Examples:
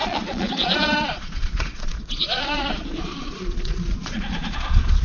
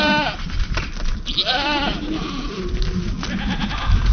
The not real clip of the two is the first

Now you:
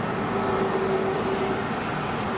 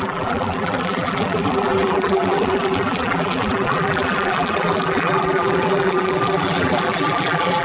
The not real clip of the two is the second